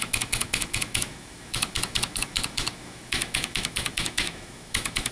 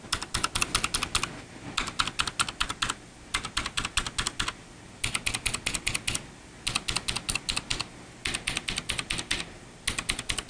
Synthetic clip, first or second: first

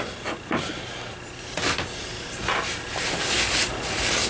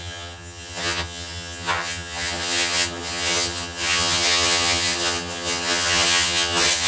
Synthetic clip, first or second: second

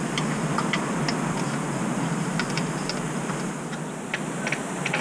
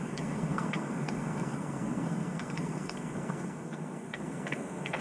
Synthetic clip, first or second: second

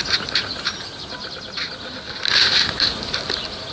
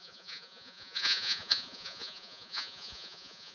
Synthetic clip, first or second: second